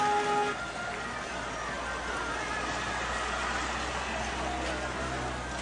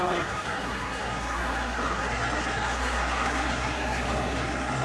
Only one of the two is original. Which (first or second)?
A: first